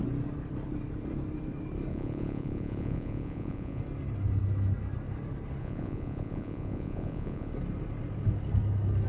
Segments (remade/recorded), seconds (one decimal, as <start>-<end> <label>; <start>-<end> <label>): 0.0-1.9 recorded; 1.9-3.8 remade; 3.8-5.6 recorded; 5.6-7.5 remade; 7.5-9.1 recorded